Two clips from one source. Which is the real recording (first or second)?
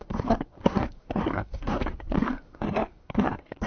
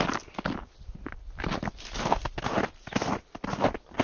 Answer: second